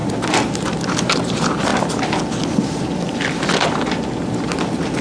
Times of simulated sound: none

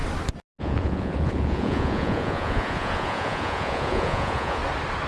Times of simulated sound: 0.6-4.6 (vocoder, Vocos)